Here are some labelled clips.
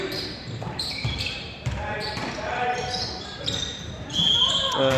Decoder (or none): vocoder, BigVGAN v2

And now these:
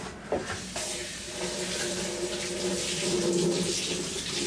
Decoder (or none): none